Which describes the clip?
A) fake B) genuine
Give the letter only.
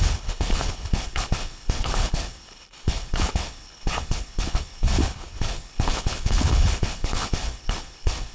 A